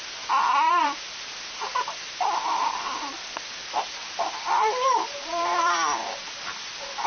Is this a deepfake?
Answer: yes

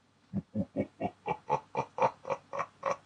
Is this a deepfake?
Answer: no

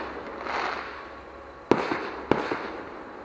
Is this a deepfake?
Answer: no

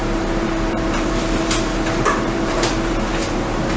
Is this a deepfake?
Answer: yes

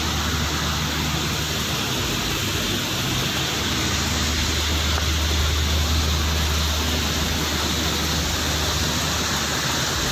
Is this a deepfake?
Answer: no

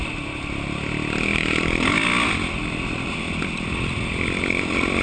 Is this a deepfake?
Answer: no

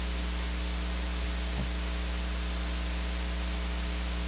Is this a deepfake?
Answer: no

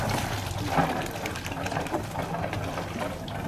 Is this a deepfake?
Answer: no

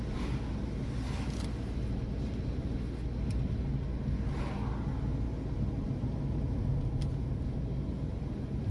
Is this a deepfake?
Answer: no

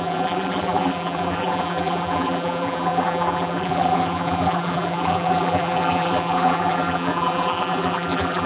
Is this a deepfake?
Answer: yes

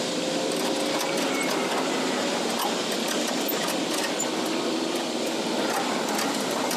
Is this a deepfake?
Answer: no